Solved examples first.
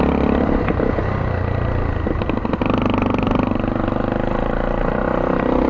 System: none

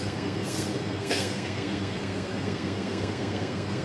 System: codec, SNAC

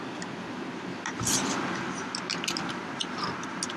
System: none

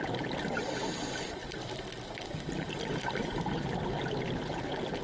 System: none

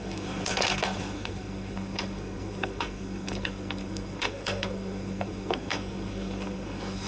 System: codec, SNAC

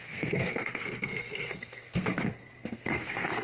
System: codec, SNAC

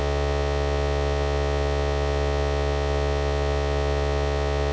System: none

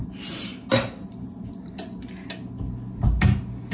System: none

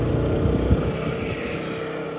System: none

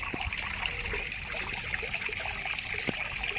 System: none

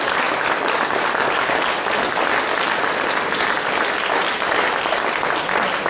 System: none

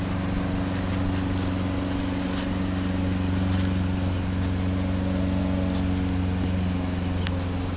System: none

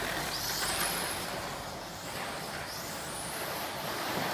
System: none